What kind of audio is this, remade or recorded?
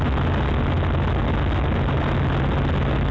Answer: recorded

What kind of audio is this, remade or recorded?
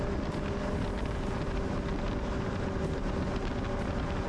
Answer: recorded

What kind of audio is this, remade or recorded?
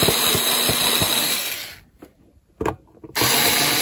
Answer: remade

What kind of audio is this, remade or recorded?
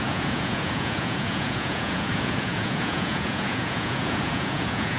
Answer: remade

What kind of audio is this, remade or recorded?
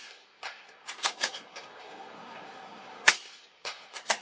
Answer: remade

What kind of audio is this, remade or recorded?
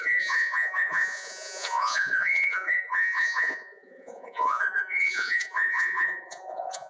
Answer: remade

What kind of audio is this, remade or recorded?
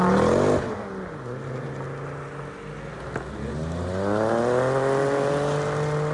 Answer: recorded